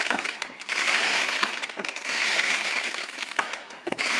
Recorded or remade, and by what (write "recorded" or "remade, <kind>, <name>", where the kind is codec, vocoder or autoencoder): remade, codec, SNAC